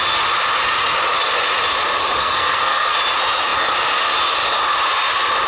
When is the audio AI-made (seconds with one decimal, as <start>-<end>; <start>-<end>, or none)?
2.2-3.0